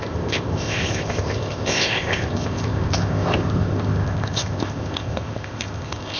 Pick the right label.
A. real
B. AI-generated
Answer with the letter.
B